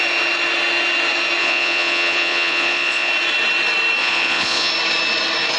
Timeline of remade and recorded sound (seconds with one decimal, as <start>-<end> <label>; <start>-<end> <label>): 0.0-1.4 recorded; 1.4-3.1 remade; 3.1-4.0 recorded; 4.0-4.7 remade; 4.7-5.6 recorded